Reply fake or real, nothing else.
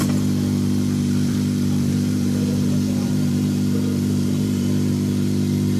fake